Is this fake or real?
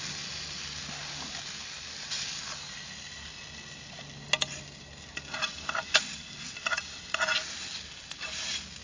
real